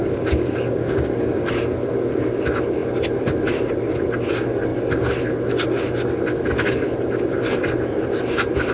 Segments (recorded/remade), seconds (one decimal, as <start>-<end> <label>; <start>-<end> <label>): 0.0-1.5 remade; 1.5-8.7 recorded